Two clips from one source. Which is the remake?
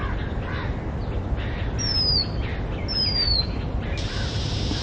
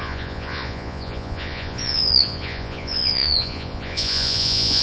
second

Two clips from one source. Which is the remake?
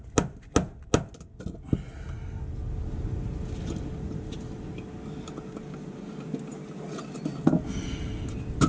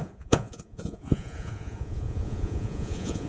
second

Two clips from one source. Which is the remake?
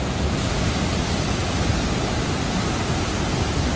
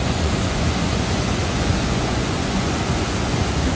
second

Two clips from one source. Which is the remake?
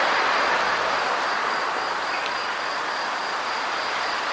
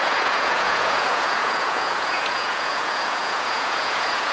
second